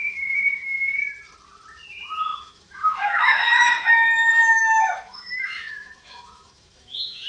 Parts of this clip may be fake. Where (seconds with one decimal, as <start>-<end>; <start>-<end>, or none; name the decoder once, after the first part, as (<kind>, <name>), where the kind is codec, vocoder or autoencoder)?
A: 0.0-1.0 (autoencoder, DAC-VAE); 1.9-7.3